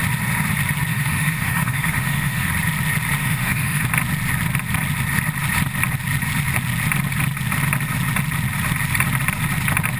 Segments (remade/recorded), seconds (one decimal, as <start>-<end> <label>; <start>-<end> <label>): 0.0-0.9 recorded; 0.9-2.5 remade; 2.5-3.2 recorded; 3.2-3.8 remade; 3.8-10.0 recorded